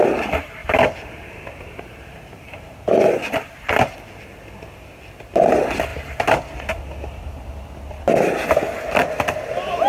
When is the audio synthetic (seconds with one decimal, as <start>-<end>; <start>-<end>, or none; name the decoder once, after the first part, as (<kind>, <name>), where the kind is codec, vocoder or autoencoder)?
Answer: 0.6-3.2 (vocoder, BigVGAN v2)